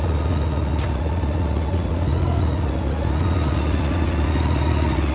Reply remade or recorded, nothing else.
remade